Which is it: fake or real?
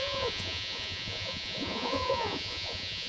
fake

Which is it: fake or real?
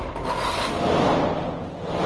real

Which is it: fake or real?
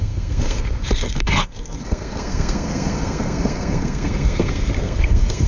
fake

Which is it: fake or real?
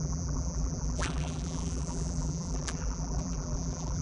fake